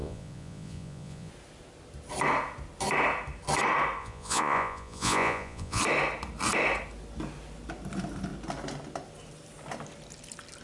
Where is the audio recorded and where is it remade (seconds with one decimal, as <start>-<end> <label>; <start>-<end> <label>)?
0.0-1.3 remade; 1.3-4.0 recorded; 4.0-5.8 remade; 5.8-10.6 recorded